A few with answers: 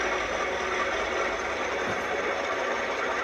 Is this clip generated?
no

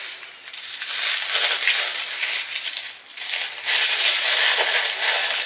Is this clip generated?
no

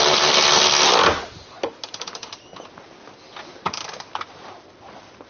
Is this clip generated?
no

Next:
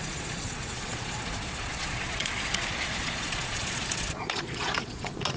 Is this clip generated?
yes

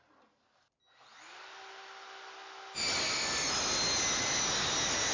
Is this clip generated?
no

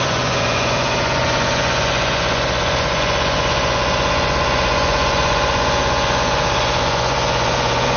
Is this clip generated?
yes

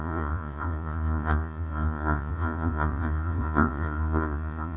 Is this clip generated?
yes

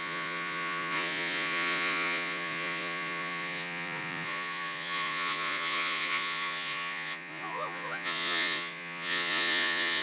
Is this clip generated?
yes